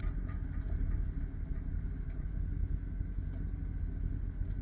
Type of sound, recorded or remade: recorded